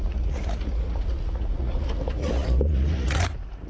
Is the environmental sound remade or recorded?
remade